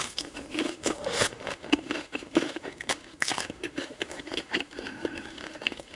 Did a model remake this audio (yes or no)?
yes